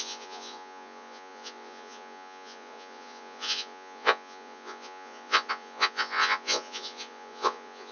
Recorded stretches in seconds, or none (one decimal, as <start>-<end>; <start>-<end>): none